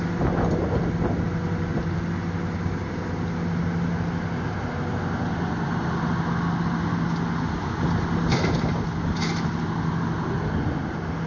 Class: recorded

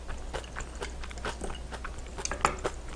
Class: recorded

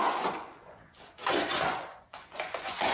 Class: remade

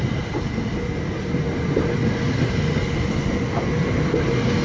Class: recorded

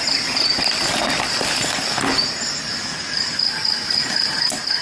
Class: recorded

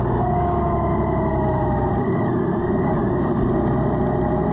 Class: recorded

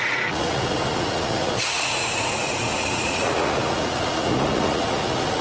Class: remade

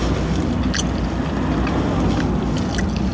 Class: recorded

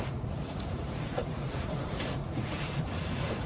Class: remade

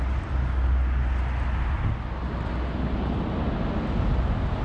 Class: recorded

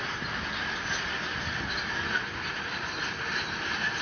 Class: recorded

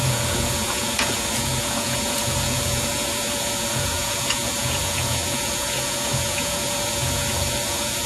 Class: remade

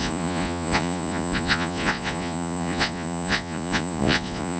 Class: remade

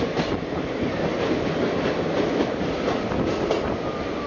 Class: recorded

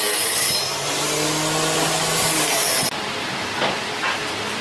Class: recorded